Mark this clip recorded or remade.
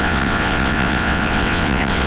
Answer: remade